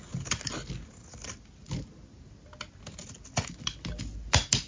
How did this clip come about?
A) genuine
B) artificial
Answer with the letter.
A